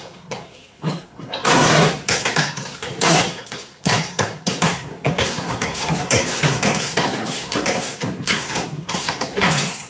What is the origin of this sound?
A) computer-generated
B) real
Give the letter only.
A